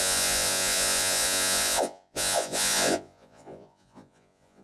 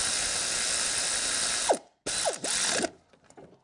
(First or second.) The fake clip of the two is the first